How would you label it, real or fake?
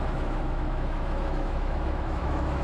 fake